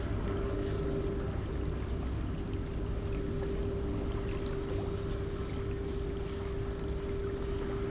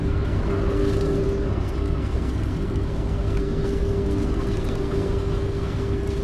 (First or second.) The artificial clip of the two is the second